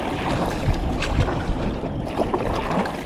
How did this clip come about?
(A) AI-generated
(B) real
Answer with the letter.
B